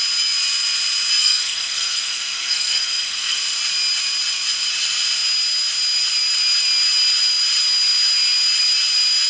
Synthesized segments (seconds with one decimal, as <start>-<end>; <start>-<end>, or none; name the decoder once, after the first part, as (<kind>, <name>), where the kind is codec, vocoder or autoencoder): 1.2-3.4 (codec, SNAC)